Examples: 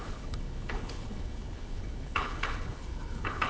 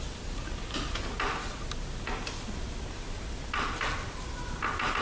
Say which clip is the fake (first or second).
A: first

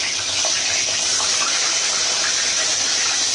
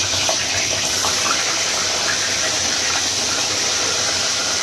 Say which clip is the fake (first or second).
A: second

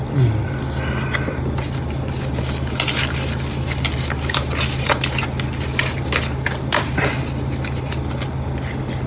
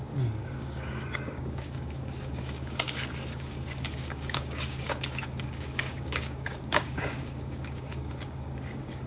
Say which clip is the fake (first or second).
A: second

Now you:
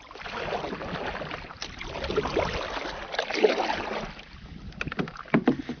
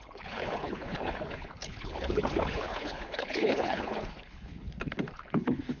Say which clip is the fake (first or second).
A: second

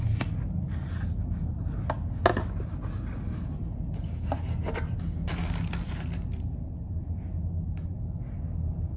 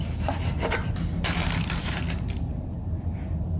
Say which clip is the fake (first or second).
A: second